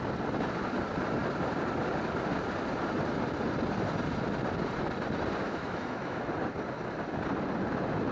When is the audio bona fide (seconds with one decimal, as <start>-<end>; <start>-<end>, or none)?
0.0-5.4; 6.3-8.1

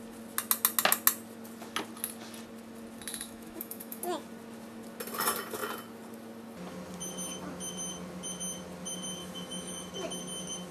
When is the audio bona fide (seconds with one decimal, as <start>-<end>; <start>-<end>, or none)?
0.0-3.1; 4.0-9.2; 9.9-10.7